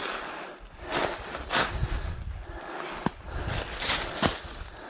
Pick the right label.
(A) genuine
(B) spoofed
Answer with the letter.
A